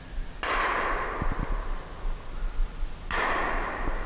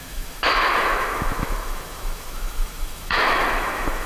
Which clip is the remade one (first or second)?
second